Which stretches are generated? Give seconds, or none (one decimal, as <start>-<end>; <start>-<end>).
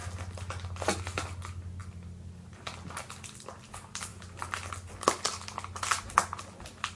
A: none